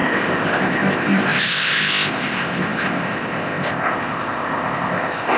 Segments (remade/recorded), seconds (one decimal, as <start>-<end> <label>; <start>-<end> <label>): 0.0-5.4 remade

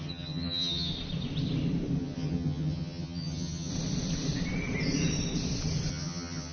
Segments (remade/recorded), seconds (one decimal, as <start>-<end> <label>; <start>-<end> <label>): 0.0-0.9 remade; 0.9-2.0 recorded; 2.0-3.7 remade; 3.7-5.9 recorded; 5.9-6.5 remade

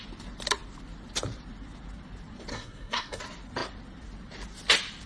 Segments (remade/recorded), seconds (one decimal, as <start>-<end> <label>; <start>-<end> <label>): 0.0-2.5 recorded; 2.5-3.2 remade; 3.2-5.1 recorded

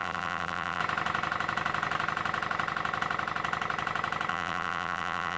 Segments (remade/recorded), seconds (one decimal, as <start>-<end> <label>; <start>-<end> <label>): 0.0-0.8 remade; 0.8-4.3 recorded; 4.3-5.4 remade

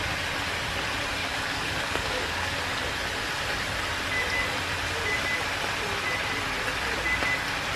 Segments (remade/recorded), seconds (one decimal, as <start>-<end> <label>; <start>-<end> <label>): 0.0-1.2 recorded; 1.2-2.5 remade; 2.5-7.8 recorded

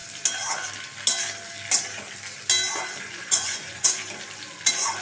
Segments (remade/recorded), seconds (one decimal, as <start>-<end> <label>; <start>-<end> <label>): 0.0-3.0 recorded; 3.0-4.0 remade; 4.0-5.0 recorded

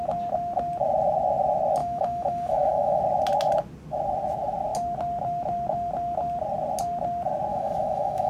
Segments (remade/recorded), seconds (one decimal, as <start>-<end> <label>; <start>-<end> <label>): 0.0-1.8 recorded; 1.8-3.0 remade; 3.0-7.5 recorded; 7.5-8.3 remade

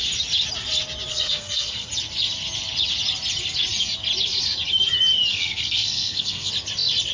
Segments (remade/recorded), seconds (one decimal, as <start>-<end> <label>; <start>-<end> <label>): 0.0-1.1 recorded; 1.1-1.9 remade; 1.9-5.3 recorded; 5.3-6.5 remade; 6.5-7.1 recorded